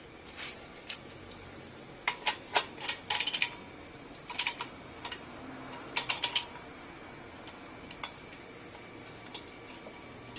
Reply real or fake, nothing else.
real